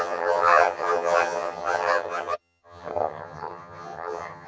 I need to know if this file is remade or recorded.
remade